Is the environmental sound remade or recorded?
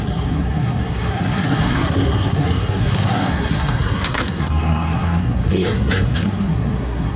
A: remade